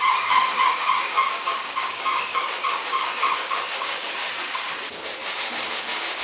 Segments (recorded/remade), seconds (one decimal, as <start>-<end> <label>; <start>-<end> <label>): 0.0-0.4 recorded; 0.4-4.1 remade; 4.1-5.2 recorded; 5.2-6.2 remade